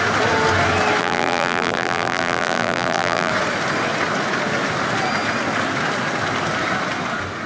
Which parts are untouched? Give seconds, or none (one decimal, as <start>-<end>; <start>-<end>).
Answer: 0.0-1.0; 3.3-7.5